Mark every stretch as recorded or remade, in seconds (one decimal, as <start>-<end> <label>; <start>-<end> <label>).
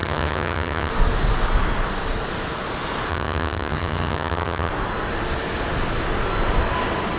0.0-0.9 remade; 0.9-3.1 recorded; 3.1-4.7 remade; 4.7-7.2 recorded